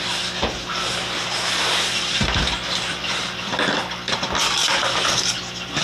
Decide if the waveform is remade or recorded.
recorded